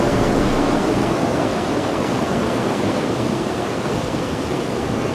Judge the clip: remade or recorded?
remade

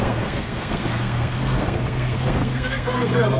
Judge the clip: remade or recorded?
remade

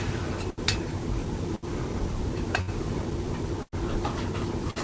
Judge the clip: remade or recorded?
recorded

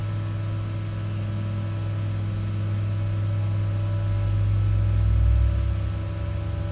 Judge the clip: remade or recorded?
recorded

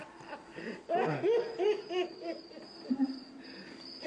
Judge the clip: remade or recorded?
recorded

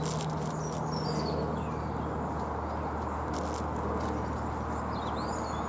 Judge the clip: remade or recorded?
recorded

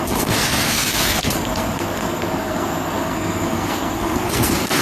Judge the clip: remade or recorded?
remade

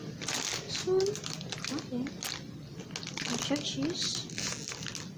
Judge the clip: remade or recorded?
recorded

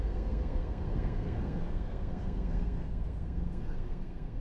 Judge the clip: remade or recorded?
remade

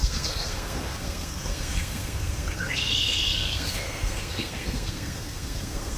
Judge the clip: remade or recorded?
remade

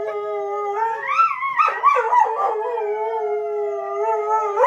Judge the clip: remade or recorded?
recorded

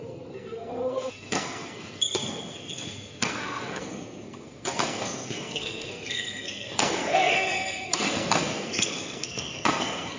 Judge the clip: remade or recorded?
remade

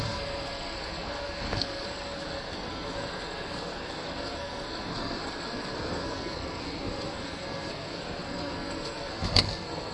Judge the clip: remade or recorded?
remade